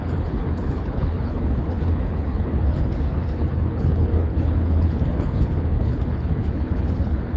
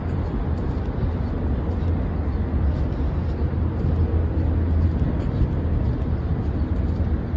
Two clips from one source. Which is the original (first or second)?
second